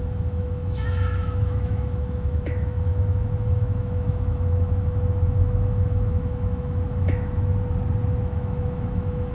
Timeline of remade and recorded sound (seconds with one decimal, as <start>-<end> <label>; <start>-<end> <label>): 0.0-7.5 remade; 7.5-8.2 recorded; 8.2-9.3 remade